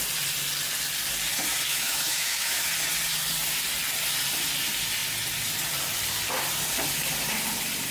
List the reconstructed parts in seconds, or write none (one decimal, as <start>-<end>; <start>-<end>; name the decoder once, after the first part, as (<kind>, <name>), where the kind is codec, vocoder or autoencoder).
1.7-2.7 (autoencoder, DAC-VAE)